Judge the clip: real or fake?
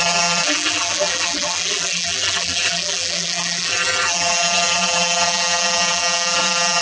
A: fake